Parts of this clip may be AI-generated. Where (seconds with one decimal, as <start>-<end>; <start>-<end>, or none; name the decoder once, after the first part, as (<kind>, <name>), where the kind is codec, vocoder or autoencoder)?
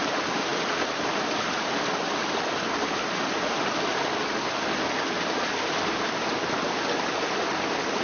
none